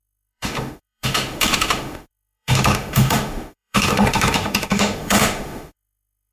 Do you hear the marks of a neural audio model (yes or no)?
yes